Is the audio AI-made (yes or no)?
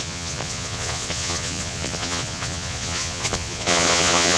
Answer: yes